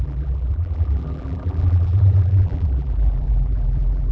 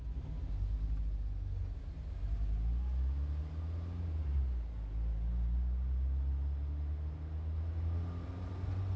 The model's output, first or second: first